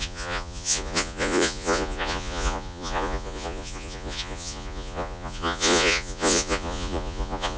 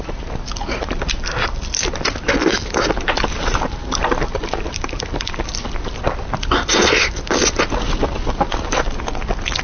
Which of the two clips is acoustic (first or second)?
second